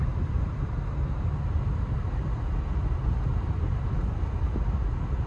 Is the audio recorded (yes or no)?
yes